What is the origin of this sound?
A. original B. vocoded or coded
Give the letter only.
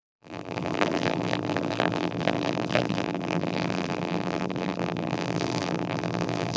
B